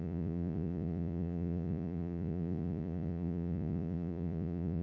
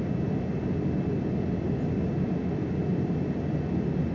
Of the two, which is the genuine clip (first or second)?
second